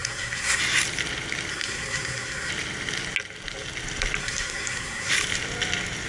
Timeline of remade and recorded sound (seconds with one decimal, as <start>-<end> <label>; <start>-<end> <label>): 0.0-0.6 remade; 0.6-1.5 recorded; 1.5-2.5 remade; 2.5-4.2 recorded; 4.2-5.1 remade; 5.1-6.1 recorded